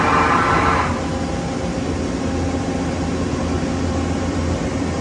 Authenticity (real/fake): real